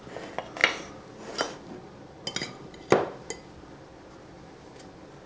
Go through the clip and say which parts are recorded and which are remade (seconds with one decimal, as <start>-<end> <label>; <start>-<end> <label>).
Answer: 0.0-5.3 recorded